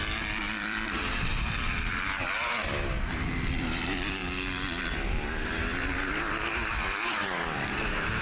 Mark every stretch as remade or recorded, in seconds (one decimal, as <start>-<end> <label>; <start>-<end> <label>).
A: 0.0-2.5 remade; 2.5-3.4 recorded; 3.4-4.2 remade; 4.2-4.8 recorded; 4.8-8.2 remade